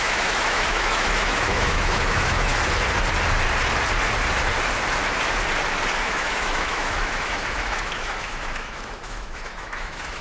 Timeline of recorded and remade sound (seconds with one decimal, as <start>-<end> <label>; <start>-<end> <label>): 0.0-2.5 remade; 2.5-6.0 recorded; 6.0-10.2 remade